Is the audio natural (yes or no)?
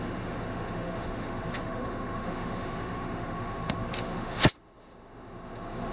no